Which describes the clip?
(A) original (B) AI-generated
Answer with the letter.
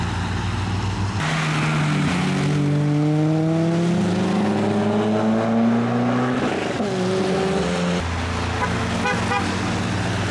A